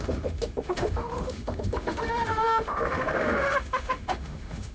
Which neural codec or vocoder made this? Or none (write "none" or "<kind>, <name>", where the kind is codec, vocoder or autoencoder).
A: autoencoder, DAC-VAE